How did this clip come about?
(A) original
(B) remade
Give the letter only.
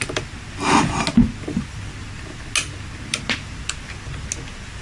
A